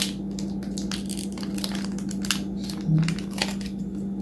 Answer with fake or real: real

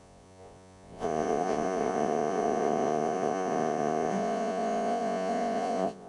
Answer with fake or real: fake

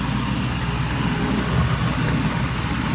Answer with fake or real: real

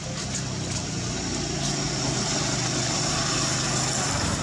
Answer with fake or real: real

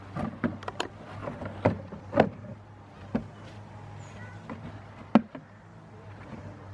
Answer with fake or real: real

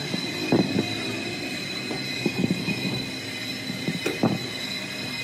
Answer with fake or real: real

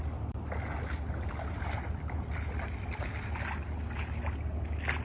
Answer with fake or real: real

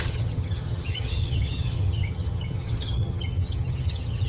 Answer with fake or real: fake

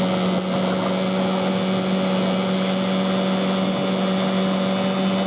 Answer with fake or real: real